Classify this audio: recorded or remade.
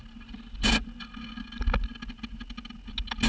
recorded